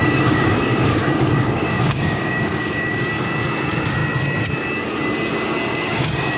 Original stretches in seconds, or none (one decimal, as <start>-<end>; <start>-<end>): 3.1-5.7